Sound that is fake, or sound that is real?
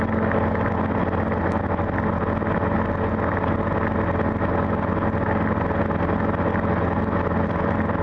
real